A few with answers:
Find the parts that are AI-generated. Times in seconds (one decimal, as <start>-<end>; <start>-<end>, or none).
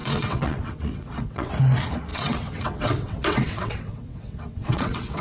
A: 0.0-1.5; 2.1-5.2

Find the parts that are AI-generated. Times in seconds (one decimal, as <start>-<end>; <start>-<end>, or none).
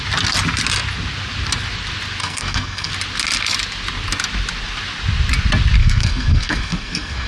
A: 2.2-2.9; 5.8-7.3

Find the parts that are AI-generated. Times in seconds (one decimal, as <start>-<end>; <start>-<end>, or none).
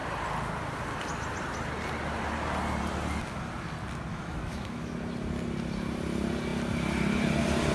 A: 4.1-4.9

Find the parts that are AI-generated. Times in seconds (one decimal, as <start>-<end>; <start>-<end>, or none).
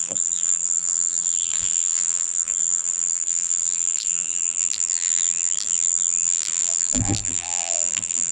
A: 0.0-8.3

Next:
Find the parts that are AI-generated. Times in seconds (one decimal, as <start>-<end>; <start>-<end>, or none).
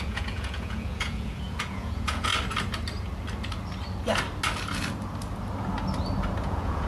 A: 0.0-2.3; 6.4-6.9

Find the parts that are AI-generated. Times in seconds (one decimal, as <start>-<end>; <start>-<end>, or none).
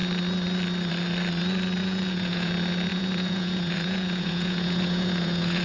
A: 1.8-2.5; 2.9-5.6